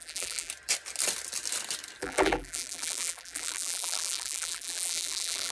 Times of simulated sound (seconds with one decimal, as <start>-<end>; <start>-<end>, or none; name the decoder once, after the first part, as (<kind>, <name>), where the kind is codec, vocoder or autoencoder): 0.0-0.5 (vocoder, BigVGAN v2); 2.0-5.5